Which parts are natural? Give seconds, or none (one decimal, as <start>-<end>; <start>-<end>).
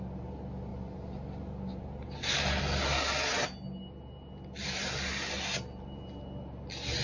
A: 0.0-7.0